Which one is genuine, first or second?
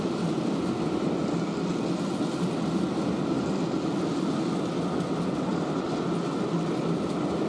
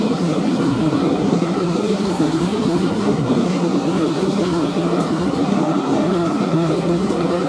first